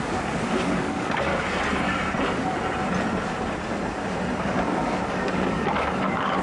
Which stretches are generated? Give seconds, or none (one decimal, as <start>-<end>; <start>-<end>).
0.0-1.3; 4.4-6.4